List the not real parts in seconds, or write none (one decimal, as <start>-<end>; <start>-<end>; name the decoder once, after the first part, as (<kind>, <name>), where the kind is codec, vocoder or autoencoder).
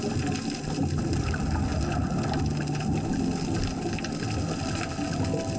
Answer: none